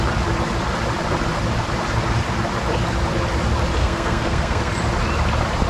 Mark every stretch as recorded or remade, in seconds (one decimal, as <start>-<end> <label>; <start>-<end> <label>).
0.0-3.8 recorded; 3.8-4.7 remade; 4.7-5.7 recorded